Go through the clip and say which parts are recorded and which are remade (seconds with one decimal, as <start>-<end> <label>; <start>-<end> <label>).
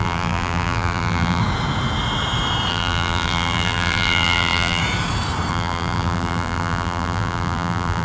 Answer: 0.0-1.4 remade; 1.4-2.7 recorded; 2.7-4.8 remade; 4.8-5.5 recorded; 5.5-8.0 remade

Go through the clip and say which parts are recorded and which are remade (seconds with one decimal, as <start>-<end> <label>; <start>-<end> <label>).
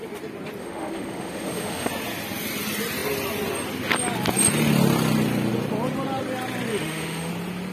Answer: 0.0-0.6 recorded; 0.6-1.9 remade; 1.9-6.7 recorded; 6.7-7.3 remade; 7.3-7.7 recorded